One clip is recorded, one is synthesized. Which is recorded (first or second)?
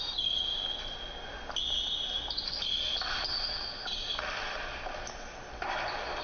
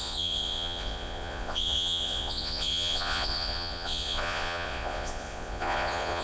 first